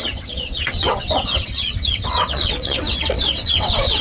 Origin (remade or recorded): remade